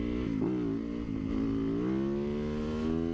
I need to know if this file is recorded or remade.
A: recorded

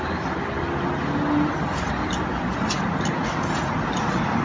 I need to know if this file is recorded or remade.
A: recorded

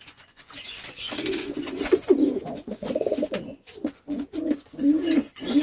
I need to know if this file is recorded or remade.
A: remade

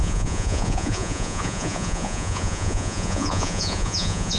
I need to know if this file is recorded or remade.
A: remade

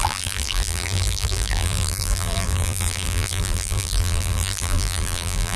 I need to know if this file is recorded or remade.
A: remade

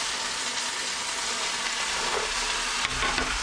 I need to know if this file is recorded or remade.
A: recorded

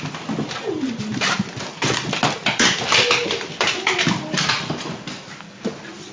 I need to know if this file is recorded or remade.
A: remade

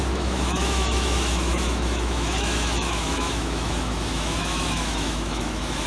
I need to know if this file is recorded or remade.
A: remade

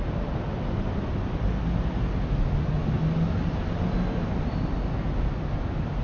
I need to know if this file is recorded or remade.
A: recorded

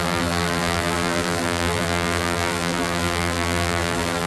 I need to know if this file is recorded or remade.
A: remade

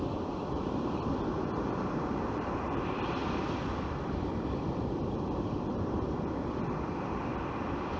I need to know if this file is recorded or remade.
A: remade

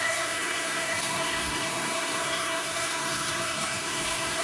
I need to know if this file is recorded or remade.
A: remade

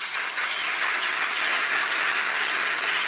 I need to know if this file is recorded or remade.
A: remade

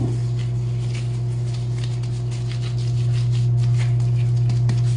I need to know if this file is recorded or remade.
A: recorded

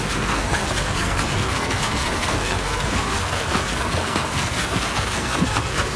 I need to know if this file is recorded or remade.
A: remade